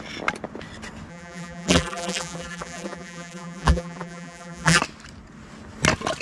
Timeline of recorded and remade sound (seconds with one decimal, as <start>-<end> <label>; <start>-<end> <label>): 0.0-1.1 recorded; 1.1-4.8 remade; 4.8-6.2 recorded